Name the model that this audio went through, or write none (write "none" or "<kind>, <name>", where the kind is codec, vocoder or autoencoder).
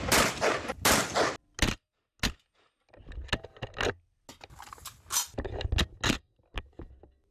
none